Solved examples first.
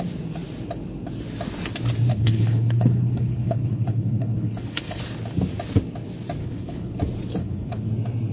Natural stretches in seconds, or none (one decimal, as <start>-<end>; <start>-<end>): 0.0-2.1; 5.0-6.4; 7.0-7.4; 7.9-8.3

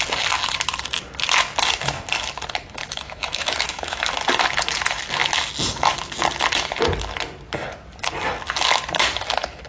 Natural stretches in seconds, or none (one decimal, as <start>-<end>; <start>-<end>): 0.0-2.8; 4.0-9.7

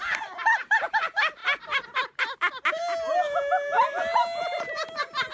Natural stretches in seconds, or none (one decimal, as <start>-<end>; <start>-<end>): 0.0-5.3

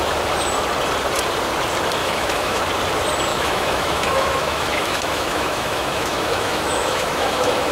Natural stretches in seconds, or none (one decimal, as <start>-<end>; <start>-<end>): 0.0-2.0; 2.6-3.3

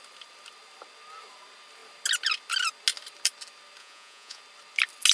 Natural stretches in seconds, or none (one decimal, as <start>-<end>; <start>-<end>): 0.0-3.8; 4.4-5.1

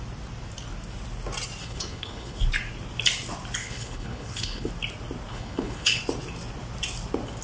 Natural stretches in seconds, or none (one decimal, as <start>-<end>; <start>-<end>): 0.0-1.6; 2.4-3.6; 4.7-5.3; 6.0-7.4

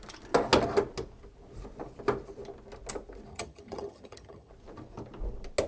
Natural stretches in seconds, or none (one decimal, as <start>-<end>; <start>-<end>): 0.0-3.3; 4.5-5.7